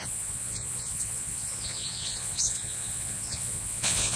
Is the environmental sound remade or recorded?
remade